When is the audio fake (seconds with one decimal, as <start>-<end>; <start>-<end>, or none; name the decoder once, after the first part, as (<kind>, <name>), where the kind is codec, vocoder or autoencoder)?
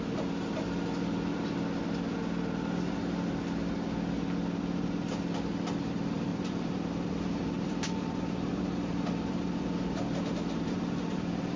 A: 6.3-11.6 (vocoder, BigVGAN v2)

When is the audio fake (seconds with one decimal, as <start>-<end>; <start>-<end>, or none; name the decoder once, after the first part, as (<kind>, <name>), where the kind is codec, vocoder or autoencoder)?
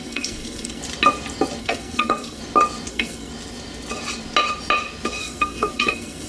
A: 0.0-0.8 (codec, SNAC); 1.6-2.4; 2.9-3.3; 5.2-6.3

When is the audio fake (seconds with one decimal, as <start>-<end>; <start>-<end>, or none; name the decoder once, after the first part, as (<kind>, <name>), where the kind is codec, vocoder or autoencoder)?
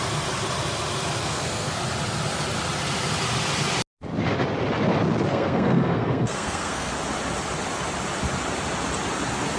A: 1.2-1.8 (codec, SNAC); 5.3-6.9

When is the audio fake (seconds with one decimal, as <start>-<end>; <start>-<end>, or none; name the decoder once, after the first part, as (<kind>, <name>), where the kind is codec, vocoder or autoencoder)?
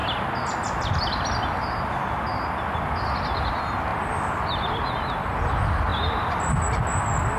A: none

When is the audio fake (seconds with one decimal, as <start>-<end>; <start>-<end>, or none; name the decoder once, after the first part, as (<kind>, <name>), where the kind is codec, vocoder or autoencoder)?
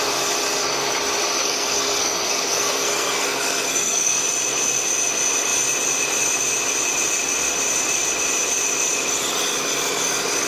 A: 1.4-4.2 (codec, SNAC)